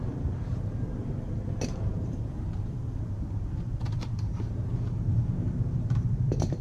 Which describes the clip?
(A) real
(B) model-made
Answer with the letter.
B